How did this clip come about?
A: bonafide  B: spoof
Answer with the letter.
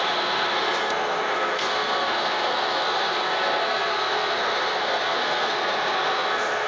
B